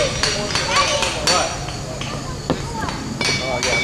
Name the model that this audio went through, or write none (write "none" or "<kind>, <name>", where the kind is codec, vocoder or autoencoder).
none